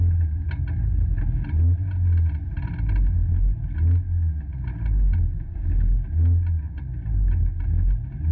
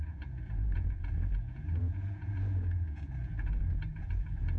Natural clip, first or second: first